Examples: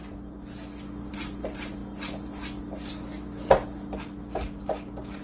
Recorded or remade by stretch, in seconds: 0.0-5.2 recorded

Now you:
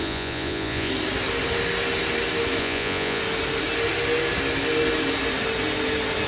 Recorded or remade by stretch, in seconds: 0.0-0.9 remade; 0.9-2.6 recorded; 2.6-3.2 remade; 3.2-6.3 recorded

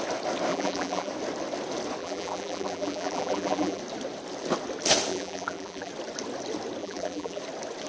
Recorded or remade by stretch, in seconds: 0.0-0.5 recorded; 0.5-1.1 remade; 1.1-2.0 recorded; 2.0-3.8 remade; 3.8-5.1 recorded; 5.1-5.9 remade; 5.9-6.8 recorded; 6.8-7.4 remade; 7.4-7.9 recorded

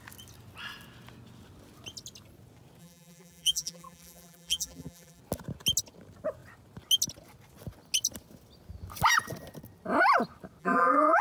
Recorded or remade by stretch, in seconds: 0.0-2.8 recorded; 2.8-5.2 remade; 5.2-10.6 recorded; 10.6-11.2 remade

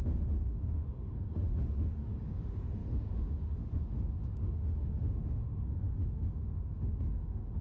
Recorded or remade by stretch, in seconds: 0.0-7.6 remade

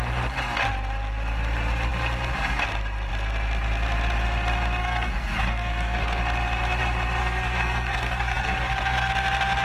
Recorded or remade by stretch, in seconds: 0.0-4.8 recorded; 4.8-6.2 remade; 6.2-7.2 recorded; 7.2-9.1 remade; 9.1-9.6 recorded

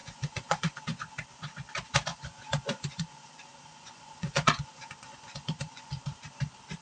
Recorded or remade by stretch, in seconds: 0.0-0.8 remade; 0.8-2.1 recorded; 2.1-6.0 remade; 6.0-6.8 recorded

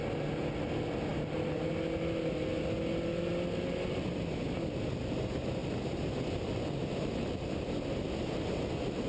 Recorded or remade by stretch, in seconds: 0.0-9.1 recorded